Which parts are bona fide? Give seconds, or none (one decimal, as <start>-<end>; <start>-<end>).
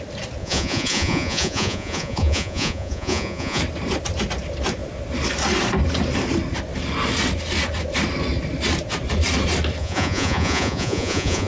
0.0-0.4; 3.6-9.8